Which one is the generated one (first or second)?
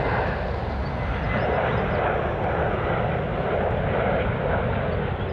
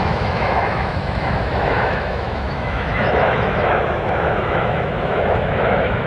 second